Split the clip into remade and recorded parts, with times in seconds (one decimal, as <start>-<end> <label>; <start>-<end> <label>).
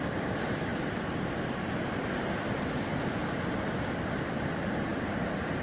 0.0-5.6 remade